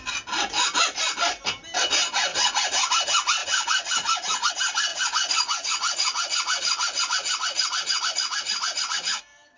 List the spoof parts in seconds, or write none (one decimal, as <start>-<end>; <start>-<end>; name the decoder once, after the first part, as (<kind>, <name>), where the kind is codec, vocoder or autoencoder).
2.3-2.9 (vocoder, Vocos); 3.4-4.5; 4.9-9.2

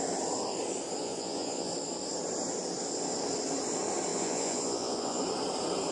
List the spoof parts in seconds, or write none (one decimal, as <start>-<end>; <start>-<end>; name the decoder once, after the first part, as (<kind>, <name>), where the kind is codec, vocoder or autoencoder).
1.0-1.7 (vocoder, Vocos); 4.1-5.2

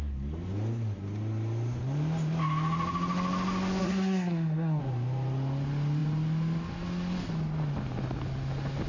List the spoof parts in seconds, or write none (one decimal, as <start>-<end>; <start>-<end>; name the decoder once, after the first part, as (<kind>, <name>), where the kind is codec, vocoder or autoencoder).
3.8-4.8 (codec, SNAC)

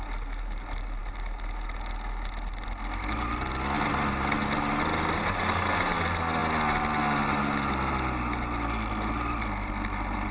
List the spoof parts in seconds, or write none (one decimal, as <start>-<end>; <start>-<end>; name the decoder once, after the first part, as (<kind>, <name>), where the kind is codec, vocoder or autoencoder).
none

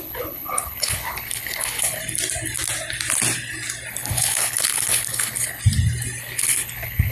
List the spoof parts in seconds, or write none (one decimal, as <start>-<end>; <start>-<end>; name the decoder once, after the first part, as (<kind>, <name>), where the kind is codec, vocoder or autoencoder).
0.0-2.0 (codec, HILCodec); 3.9-5.6; 6.2-7.1